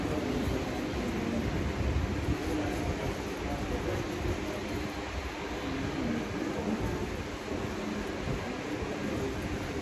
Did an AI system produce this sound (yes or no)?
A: no